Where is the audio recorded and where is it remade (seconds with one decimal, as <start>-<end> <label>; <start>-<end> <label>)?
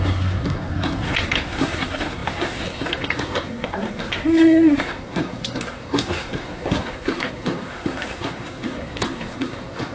0.0-9.9 remade